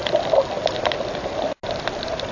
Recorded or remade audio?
recorded